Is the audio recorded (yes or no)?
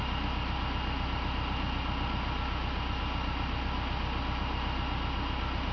yes